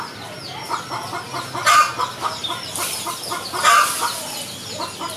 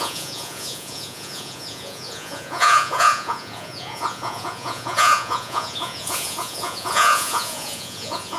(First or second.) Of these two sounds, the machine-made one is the second